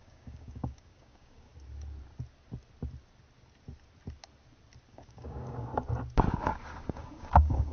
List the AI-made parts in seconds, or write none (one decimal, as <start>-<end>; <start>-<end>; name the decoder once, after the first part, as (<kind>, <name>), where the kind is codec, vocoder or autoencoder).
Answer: 0.0-1.5 (codec, DAC); 4.9-5.7; 6.3-7.7